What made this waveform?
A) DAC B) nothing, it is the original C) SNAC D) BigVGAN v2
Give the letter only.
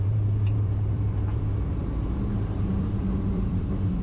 D